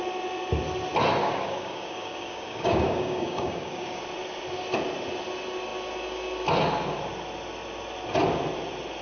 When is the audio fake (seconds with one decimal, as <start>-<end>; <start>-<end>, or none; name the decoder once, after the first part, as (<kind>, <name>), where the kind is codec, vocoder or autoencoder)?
1.2-4.0 (codec, DAC)